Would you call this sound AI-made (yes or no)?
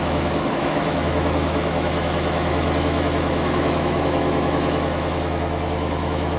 yes